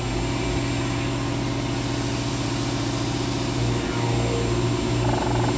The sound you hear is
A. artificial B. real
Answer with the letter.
B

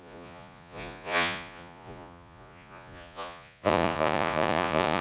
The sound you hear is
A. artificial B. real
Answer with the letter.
A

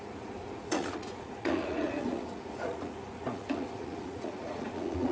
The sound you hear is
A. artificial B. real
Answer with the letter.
A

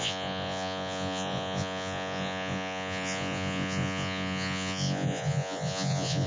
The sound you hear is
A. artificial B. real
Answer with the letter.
A